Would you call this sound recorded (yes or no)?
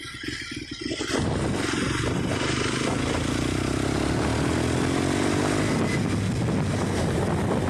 yes